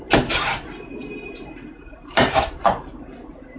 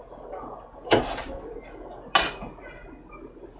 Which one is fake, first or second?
first